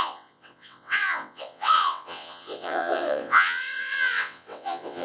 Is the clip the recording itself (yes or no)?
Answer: no